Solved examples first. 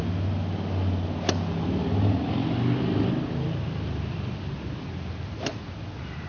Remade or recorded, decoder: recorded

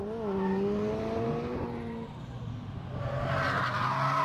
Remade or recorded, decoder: recorded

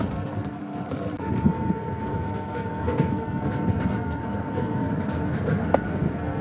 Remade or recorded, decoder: remade, codec, SNAC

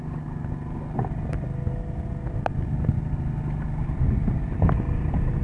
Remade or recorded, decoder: recorded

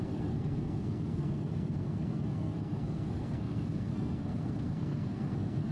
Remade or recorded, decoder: remade, codec, SNAC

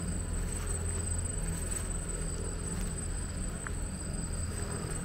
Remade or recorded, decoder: recorded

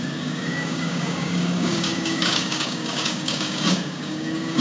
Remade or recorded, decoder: remade, codec, DAC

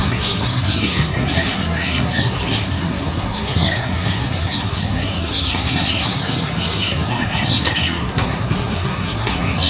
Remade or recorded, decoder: remade, codec, SNAC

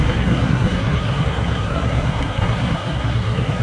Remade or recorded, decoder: remade, codec, SNAC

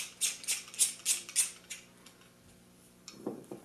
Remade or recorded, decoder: recorded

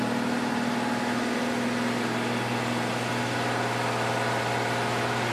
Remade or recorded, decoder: recorded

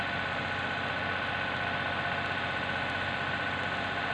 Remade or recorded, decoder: recorded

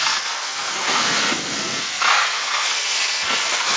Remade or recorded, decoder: remade, codec, SNAC